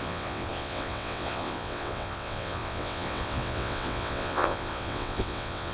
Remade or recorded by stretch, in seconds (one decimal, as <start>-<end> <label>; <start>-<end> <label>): 0.0-5.7 remade